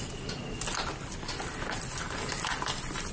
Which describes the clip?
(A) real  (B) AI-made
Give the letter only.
A